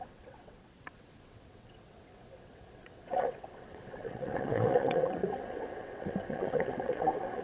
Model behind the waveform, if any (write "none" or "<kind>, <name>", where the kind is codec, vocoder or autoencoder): vocoder, WaveNeXt